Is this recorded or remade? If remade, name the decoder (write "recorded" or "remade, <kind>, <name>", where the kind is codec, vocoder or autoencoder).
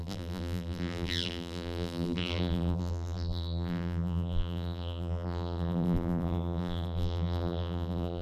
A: remade, vocoder, BigVGAN v2